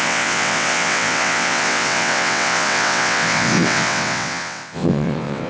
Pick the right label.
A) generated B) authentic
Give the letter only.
A